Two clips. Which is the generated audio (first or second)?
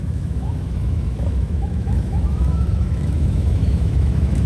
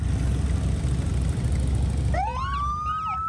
first